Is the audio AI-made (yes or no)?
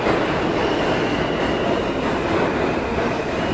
no